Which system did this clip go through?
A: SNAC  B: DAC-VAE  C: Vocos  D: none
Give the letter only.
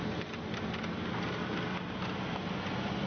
D